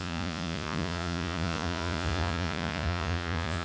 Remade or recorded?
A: remade